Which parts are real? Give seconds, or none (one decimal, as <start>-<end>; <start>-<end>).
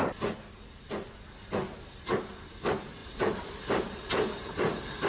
0.0-3.0; 4.0-5.1